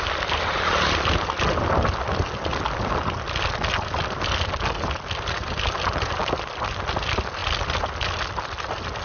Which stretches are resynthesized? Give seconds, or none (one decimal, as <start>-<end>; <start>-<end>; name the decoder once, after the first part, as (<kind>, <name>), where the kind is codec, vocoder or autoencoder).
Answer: none